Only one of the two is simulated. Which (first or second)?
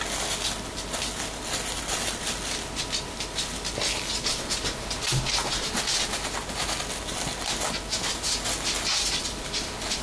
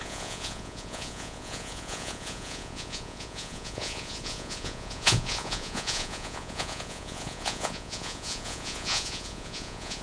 second